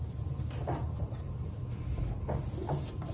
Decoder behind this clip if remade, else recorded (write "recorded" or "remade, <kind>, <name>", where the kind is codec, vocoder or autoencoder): recorded